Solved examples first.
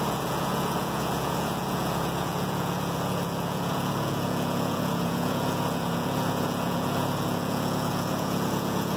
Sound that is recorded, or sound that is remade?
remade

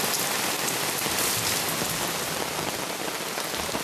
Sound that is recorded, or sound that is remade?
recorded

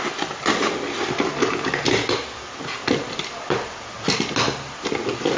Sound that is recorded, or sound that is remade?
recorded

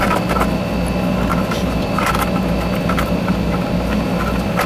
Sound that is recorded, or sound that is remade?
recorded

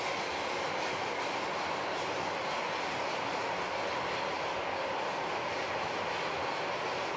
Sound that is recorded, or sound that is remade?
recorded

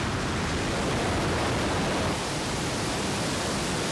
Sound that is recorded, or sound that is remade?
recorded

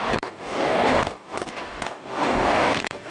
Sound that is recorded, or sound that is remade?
remade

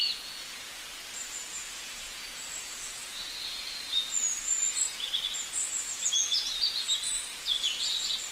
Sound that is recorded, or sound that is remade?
remade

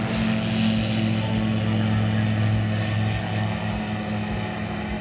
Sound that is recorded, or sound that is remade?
recorded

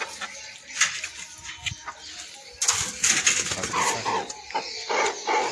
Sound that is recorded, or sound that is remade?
recorded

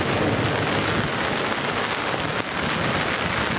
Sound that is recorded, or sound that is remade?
recorded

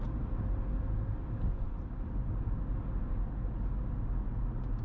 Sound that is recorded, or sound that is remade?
recorded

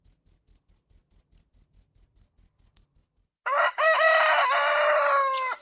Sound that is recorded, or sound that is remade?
recorded